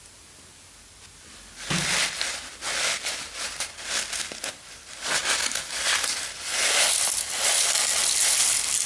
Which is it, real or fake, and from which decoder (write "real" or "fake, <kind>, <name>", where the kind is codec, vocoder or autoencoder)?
real